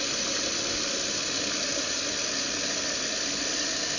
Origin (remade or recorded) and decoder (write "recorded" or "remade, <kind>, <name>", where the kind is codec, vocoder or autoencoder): recorded